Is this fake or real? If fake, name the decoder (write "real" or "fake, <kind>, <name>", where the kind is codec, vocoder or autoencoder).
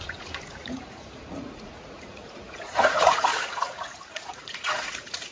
fake, vocoder, Vocos